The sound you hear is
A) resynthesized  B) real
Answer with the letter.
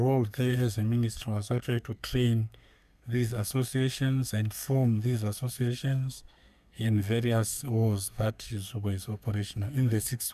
A